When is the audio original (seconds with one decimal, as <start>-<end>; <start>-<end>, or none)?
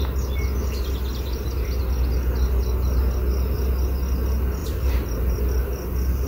0.0-4.6; 5.4-6.3